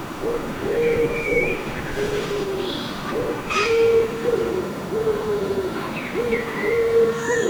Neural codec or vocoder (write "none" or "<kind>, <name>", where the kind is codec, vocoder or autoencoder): autoencoder, DAC-VAE